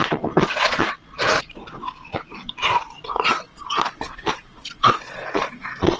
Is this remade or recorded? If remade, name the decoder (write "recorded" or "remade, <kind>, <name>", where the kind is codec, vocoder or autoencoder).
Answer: remade, vocoder, Vocos